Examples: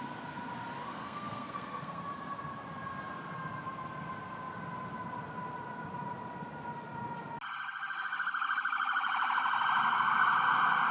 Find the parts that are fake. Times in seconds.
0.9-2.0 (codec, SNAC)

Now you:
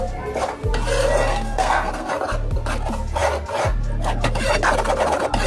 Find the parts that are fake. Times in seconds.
1.3-2.1 (codec, SNAC)

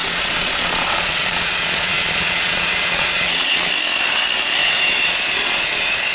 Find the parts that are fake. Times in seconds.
0.0-3.7 (vocoder, Vocos); 4.6-6.1